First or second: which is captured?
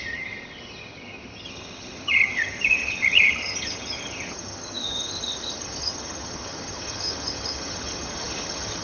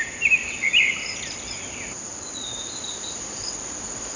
second